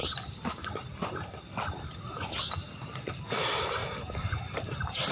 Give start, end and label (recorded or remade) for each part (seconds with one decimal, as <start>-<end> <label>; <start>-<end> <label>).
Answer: 0.0-3.8 recorded; 3.8-5.1 remade